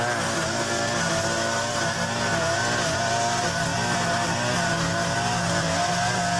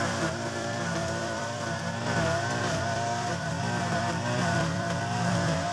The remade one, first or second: second